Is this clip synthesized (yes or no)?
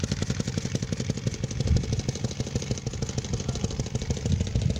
no